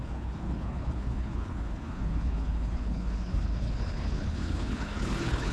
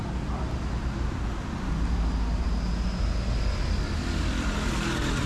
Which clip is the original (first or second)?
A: second